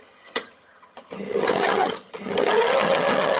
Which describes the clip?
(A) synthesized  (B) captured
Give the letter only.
A